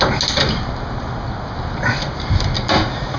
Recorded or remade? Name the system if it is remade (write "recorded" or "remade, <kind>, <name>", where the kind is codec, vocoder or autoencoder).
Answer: recorded